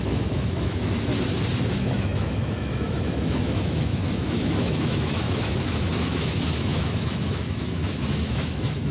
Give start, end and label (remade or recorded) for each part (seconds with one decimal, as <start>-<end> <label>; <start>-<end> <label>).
0.0-1.1 remade; 1.1-1.6 recorded; 1.6-8.9 remade